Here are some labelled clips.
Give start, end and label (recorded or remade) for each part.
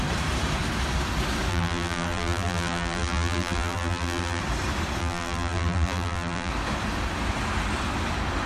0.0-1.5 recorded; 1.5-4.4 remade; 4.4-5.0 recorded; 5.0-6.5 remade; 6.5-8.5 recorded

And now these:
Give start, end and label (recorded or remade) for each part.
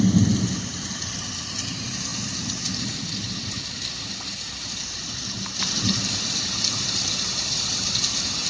0.0-2.1 recorded; 2.1-4.6 remade; 4.6-8.5 recorded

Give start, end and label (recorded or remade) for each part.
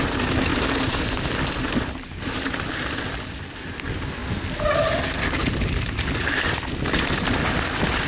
0.0-0.5 recorded; 0.5-2.5 remade; 2.5-8.1 recorded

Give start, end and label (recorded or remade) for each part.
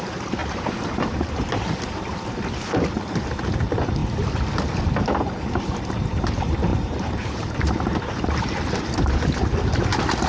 0.0-0.4 recorded; 0.4-2.5 remade; 2.5-6.7 recorded; 6.7-7.8 remade; 7.8-10.3 recorded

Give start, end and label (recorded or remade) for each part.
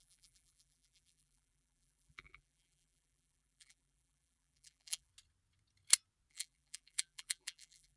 0.0-5.1 remade; 5.1-6.3 recorded; 6.3-8.0 remade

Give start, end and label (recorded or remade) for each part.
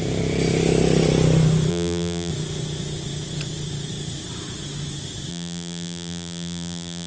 0.0-1.7 recorded; 1.7-2.3 remade; 2.3-5.3 recorded; 5.3-7.1 remade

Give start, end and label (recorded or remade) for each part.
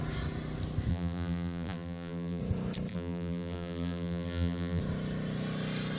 0.0-0.9 recorded; 0.9-2.4 remade; 2.4-2.9 recorded; 2.9-4.8 remade; 4.8-6.0 recorded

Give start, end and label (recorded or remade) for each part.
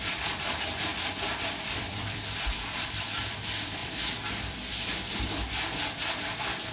0.0-0.9 remade; 0.9-1.6 recorded; 1.6-3.8 remade; 3.8-6.7 recorded